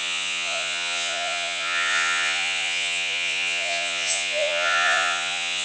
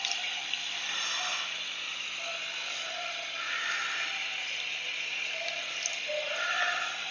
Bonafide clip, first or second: second